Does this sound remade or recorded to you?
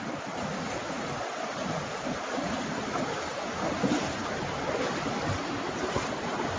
recorded